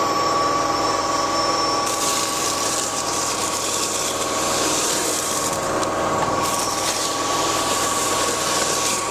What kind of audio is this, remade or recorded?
remade